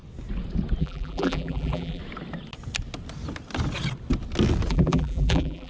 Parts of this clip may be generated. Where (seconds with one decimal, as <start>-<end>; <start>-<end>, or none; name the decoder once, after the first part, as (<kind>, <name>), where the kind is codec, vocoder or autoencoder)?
0.8-2.0 (vocoder, BigVGAN v2); 4.7-5.7